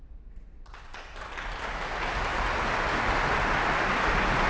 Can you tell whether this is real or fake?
real